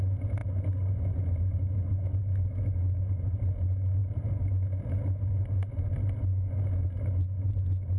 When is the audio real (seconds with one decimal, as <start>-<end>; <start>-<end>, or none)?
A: 0.0-8.0